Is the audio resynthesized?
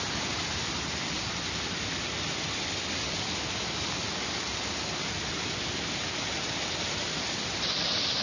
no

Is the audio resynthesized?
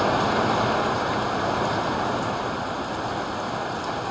no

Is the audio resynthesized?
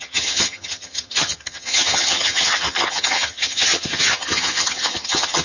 yes